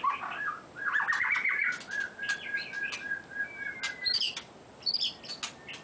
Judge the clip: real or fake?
real